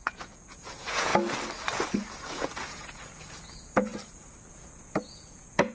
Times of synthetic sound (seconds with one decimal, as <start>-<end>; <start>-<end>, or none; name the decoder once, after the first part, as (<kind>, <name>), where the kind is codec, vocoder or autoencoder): 0.0-1.1 (vocoder, Vocos); 2.3-3.9; 4.5-5.7